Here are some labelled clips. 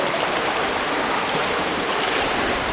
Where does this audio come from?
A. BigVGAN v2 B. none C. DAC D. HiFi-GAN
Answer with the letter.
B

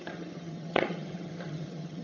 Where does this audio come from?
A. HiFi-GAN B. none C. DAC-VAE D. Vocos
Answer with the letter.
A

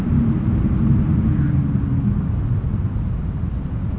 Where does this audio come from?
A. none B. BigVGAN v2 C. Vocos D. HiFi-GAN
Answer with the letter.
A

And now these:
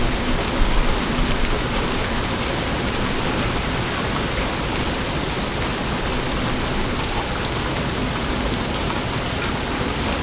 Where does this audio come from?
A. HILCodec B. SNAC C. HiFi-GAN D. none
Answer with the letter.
D